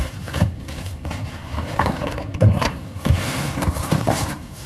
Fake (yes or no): yes